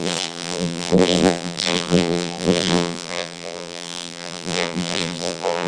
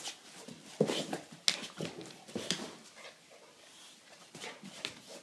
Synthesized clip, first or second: first